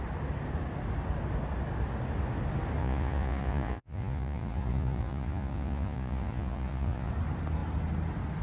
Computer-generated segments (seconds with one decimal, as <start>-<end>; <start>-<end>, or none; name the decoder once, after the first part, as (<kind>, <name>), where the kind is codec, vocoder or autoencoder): 2.8-7.1 (vocoder, Vocos)

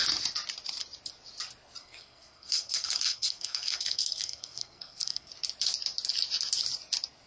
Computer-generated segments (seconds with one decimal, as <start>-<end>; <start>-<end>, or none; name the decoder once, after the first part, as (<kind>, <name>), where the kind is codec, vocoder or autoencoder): 1.8-5.3 (codec, SNAC)